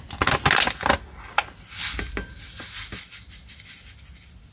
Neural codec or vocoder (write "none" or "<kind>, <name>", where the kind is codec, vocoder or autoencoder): none